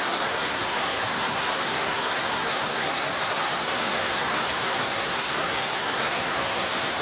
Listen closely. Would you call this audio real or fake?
fake